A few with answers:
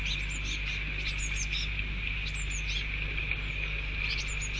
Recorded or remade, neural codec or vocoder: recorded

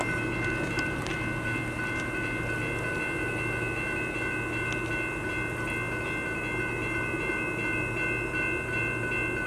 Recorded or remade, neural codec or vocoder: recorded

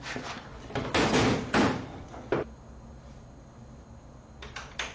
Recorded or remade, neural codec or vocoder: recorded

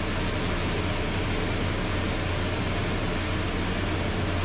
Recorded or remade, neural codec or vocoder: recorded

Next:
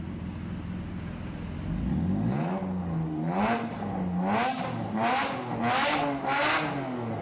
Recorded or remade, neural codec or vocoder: recorded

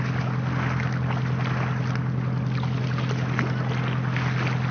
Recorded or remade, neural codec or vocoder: recorded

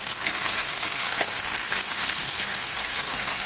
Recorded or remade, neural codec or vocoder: remade, codec, SNAC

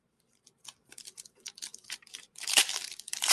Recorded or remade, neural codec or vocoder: remade, vocoder, BigVGAN v2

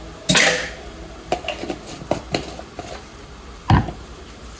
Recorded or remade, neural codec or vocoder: recorded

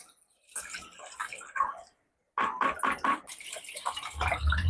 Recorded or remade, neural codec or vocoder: recorded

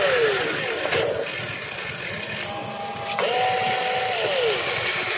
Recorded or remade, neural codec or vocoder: recorded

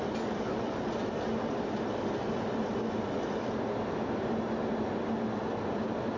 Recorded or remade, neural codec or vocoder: recorded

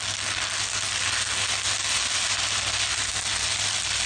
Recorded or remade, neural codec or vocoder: recorded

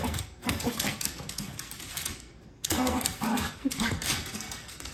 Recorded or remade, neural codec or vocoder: remade, codec, SNAC